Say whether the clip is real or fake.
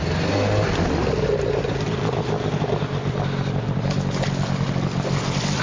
real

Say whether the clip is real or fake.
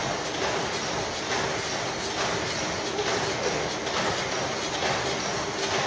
real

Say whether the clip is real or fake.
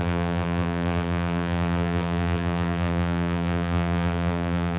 fake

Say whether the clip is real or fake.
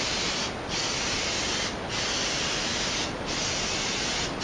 real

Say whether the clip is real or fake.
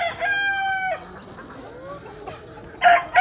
real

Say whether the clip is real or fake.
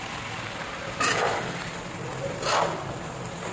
real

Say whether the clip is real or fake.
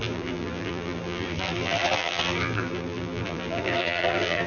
fake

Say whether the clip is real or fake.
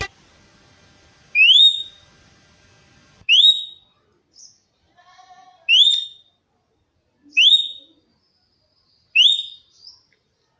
real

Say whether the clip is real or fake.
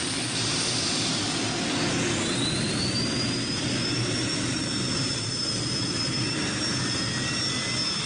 real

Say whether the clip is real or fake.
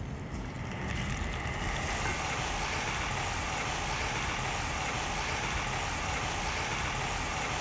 real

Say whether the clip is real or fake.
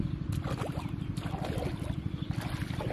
real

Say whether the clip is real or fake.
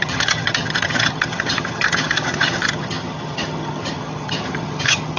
fake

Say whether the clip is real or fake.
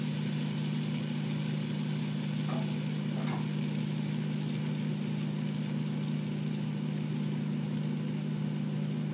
real